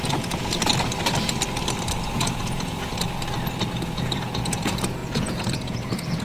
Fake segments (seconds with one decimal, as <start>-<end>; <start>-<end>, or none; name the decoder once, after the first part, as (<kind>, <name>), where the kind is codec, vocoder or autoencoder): 0.0-0.7 (vocoder, Vocos); 2.0-2.9; 3.7-6.2